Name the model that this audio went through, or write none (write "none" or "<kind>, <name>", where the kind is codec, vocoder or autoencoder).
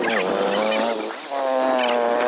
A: none